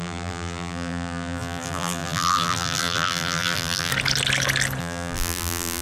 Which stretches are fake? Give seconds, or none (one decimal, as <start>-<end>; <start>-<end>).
0.0-3.9; 4.8-5.8

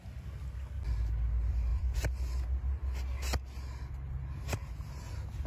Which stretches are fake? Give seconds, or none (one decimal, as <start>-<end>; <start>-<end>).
1.7-2.2

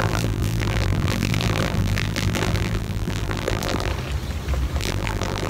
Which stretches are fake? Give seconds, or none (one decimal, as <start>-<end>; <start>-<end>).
0.0-3.9; 4.8-5.5

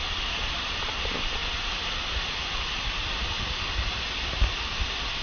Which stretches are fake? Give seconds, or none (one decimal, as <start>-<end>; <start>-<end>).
none

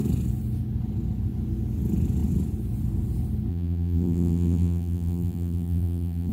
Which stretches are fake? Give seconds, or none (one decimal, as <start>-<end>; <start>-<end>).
3.5-6.3